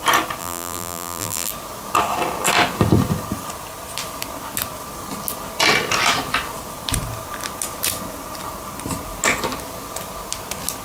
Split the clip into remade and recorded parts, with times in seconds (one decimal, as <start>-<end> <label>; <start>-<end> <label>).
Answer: 0.0-0.4 recorded; 0.4-1.5 remade; 1.5-10.8 recorded